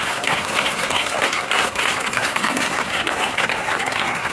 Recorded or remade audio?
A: remade